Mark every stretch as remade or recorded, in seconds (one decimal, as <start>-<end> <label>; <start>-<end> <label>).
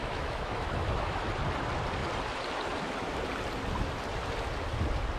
0.0-1.3 remade; 1.3-5.2 recorded